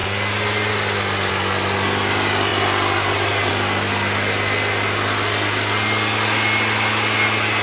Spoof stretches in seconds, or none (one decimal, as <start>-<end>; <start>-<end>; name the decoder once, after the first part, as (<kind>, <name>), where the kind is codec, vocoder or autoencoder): none